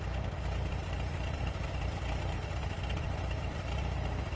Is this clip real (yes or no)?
no